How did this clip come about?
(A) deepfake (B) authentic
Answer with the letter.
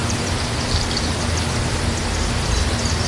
B